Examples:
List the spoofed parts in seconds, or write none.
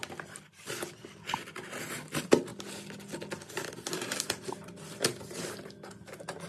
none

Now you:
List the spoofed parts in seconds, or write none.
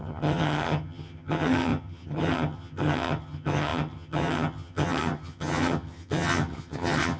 0.0-7.2 (vocoder, HiFi-GAN)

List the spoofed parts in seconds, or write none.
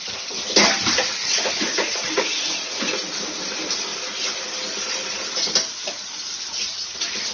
1.2-3.0 (vocoder, Vocos)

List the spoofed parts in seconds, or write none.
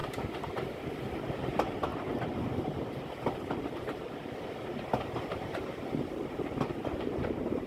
1.0-1.9 (vocoder, BigVGAN v2); 5.0-5.6; 6.8-7.7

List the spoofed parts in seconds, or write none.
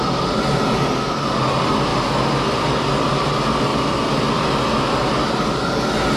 3.7-4.2 (vocoder, BigVGAN v2)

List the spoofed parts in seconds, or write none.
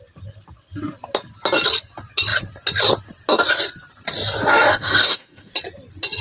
4.5-5.5 (codec, DAC)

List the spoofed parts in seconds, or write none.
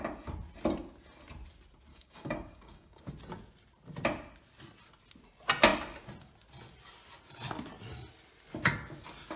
1.9-3.0 (codec, DAC)